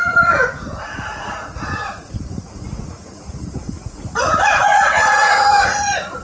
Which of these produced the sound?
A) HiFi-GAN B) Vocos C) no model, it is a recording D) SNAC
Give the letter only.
B